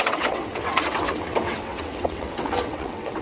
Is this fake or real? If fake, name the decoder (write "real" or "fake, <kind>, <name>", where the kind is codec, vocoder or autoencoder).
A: fake, vocoder, WaveNeXt